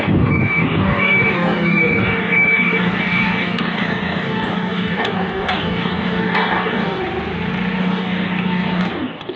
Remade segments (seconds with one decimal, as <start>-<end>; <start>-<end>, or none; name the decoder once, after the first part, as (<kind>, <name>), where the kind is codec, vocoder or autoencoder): 0.0-7.0 (codec, DAC); 7.8-9.4